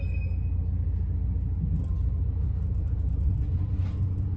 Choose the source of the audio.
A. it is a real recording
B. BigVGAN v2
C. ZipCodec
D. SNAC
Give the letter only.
A